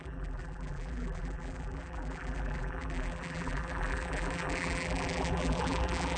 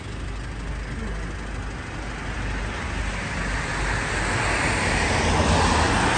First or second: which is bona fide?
second